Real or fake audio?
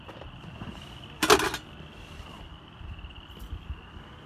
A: real